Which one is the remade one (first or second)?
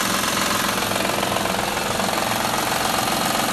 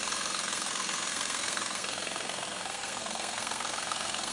second